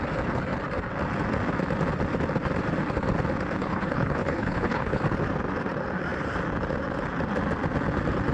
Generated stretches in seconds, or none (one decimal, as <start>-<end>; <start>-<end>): 3.6-5.0